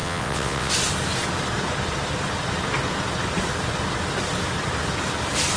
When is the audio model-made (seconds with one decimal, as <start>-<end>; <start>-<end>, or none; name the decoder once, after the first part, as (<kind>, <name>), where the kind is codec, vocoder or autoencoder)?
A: 0.0-0.7 (vocoder, WaveNeXt)